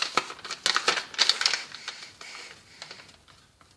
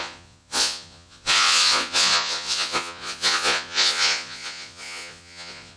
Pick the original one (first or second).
first